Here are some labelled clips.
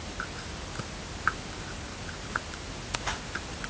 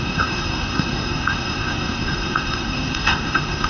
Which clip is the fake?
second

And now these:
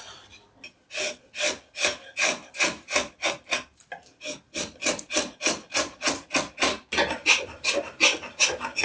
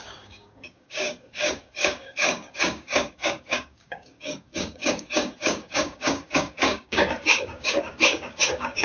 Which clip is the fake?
second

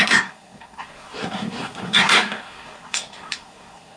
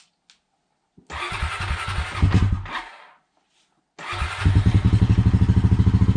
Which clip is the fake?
first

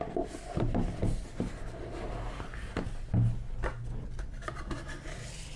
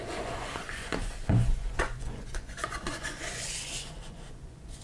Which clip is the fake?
second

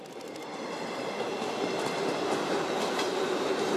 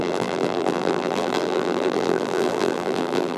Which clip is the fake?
second